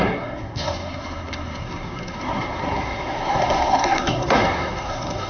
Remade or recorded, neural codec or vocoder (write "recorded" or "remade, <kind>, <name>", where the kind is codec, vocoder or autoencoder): remade, codec, SNAC